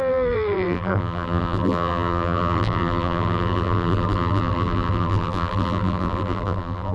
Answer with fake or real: fake